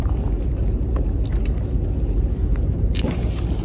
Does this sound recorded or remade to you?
recorded